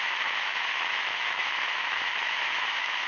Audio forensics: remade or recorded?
remade